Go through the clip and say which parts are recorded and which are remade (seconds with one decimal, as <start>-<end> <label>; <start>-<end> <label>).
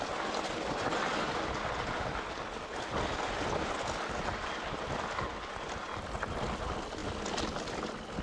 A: 0.0-8.2 recorded